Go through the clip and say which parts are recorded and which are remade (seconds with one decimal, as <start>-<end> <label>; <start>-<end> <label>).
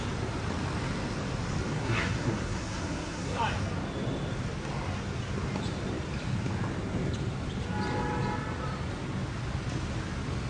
0.0-1.7 recorded; 1.7-3.4 remade; 3.4-10.5 recorded